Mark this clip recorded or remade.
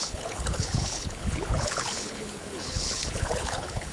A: remade